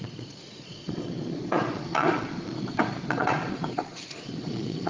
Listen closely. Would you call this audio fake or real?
fake